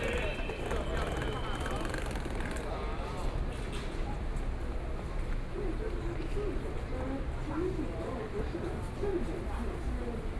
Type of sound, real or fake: real